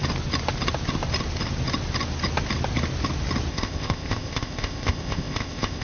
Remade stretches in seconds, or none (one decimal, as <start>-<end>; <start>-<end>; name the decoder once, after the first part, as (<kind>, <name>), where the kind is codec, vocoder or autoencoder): 3.5-5.8 (codec, ZipCodec)